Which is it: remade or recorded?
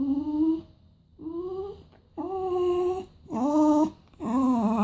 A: recorded